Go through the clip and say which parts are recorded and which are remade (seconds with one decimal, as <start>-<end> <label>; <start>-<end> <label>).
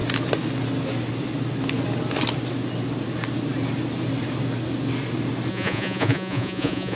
0.0-5.5 recorded; 5.5-7.0 remade